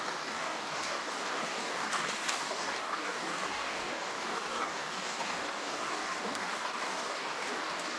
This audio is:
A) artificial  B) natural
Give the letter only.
A